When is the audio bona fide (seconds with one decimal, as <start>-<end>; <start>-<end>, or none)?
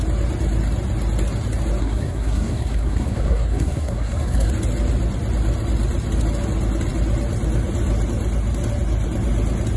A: 0.0-1.8; 4.5-9.8